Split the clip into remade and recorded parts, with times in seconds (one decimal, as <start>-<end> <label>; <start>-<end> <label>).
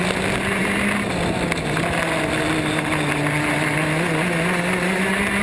0.0-5.4 recorded